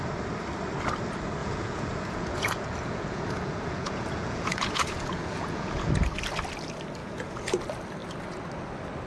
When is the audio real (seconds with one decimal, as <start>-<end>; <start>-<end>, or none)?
0.0-1.4; 5.9-7.0; 7.5-9.1